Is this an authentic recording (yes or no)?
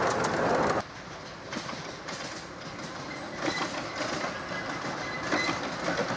yes